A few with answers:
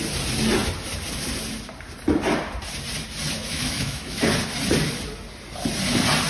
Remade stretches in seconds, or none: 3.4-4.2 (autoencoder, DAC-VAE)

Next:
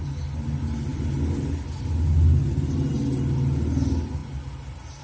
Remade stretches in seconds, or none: none

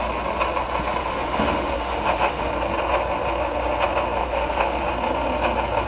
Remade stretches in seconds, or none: 1.0-2.5 (autoencoder, DAC-VAE); 4.2-4.9

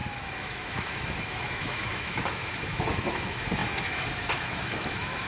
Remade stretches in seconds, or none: 0.0-5.3 (autoencoder, DAC-VAE)

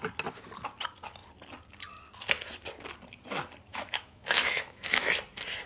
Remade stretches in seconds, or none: 3.7-5.1 (autoencoder, DAC-VAE)

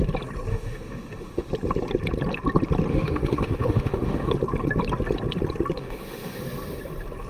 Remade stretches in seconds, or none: 0.5-1.5 (autoencoder, DAC-VAE); 2.9-4.3; 5.8-6.4